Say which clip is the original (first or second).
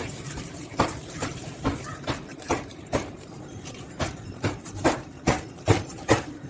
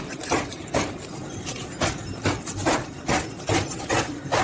second